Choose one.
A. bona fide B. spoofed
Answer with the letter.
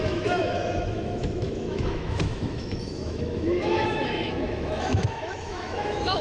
B